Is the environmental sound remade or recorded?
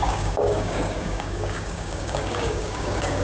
remade